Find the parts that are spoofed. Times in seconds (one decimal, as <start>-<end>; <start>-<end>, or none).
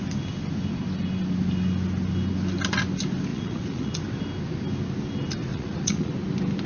3.3-3.9; 5.5-6.1